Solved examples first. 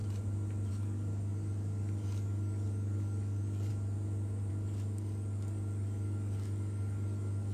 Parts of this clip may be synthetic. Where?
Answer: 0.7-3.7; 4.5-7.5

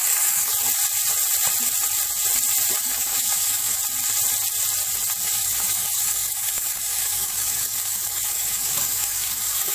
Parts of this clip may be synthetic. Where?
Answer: 0.0-0.5; 2.8-3.8; 5.2-9.7

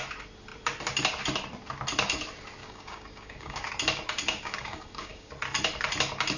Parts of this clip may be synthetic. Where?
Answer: 2.6-3.7; 4.3-5.3